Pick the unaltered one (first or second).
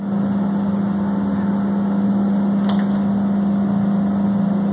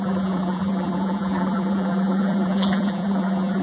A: first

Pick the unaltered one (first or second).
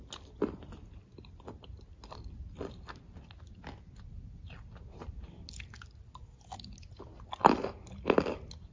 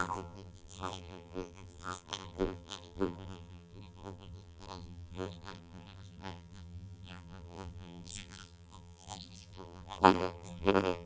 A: first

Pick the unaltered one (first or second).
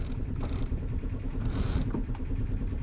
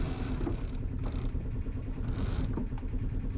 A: second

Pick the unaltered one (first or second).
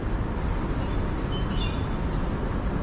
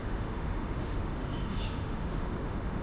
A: first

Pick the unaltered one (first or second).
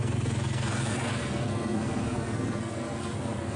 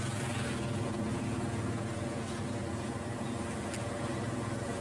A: second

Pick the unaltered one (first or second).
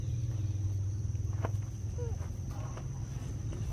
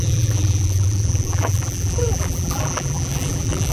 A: first